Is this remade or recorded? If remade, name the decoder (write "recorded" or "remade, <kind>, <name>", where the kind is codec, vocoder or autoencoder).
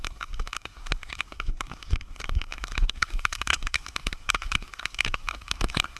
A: remade, codec, SNAC